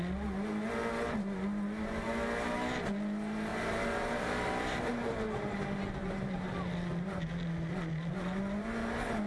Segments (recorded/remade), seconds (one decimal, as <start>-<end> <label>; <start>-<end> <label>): 0.0-3.5 recorded; 3.5-5.1 remade; 5.1-6.0 recorded; 6.0-6.5 remade; 6.5-9.3 recorded